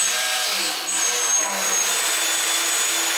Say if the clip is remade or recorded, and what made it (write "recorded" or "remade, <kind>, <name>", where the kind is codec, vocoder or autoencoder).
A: recorded